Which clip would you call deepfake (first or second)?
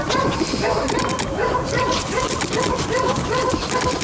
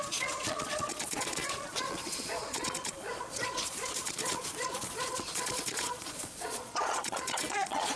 second